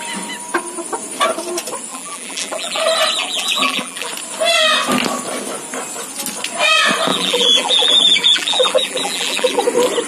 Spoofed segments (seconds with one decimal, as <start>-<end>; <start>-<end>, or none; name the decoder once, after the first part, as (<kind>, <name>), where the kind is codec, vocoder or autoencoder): 1.9-2.8 (vocoder, BigVGAN v2); 3.2-4.1; 7.1-9.6